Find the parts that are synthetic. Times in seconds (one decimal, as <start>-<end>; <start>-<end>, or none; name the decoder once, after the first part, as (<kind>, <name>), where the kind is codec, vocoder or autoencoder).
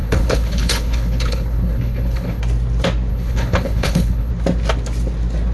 0.0-2.4 (codec, HILCodec); 3.1-4.3